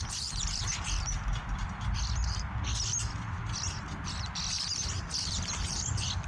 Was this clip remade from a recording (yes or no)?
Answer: no